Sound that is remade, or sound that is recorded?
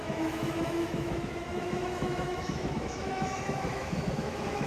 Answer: remade